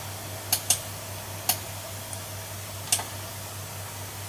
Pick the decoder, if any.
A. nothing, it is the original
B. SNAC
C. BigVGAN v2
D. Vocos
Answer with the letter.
A